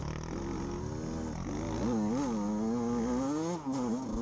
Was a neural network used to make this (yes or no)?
no